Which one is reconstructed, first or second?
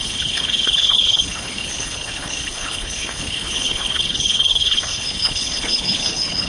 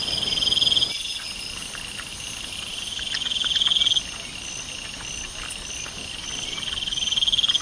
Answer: first